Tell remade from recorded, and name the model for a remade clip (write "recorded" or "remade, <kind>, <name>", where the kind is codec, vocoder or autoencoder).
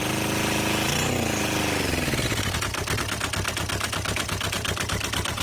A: recorded